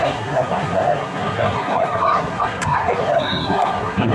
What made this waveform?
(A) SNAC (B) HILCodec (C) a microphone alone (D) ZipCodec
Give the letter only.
A